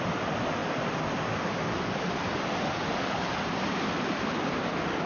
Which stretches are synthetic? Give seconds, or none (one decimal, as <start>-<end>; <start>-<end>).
none

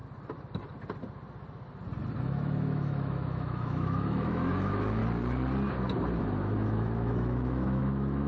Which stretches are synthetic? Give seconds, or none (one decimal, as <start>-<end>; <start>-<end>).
2.2-5.0; 6.2-8.3

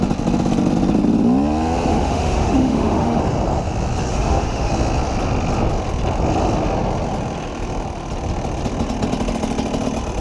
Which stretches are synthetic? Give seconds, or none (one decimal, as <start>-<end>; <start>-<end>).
1.9-3.2; 4.1-4.7

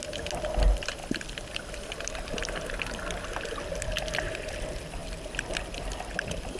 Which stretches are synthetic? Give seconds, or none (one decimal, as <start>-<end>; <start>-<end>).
none